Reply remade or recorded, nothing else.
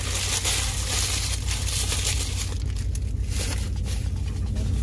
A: recorded